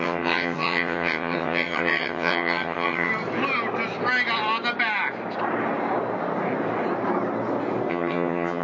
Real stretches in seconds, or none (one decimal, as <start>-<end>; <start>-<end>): 3.1-7.9